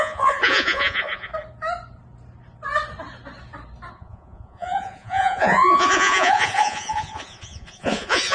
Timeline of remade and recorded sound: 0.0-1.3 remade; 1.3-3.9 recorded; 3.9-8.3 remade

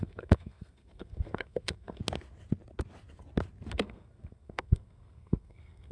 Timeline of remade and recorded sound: 0.0-2.0 remade; 2.0-3.7 recorded; 3.7-5.9 remade

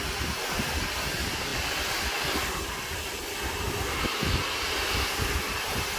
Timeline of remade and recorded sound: 0.0-6.0 recorded

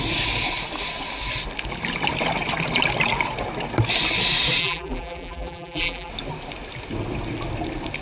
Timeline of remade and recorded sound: 0.0-4.6 recorded; 4.6-6.1 remade; 6.1-8.0 recorded

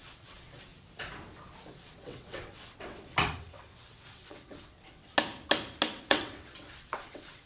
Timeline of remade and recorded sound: 0.0-0.7 remade; 0.7-1.7 recorded; 1.7-5.1 remade; 5.1-5.9 recorded; 5.9-7.5 remade